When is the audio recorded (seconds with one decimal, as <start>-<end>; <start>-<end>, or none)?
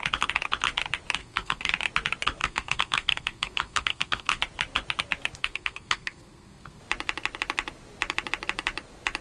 0.0-1.2; 1.7-2.4; 4.4-5.4; 6.8-9.2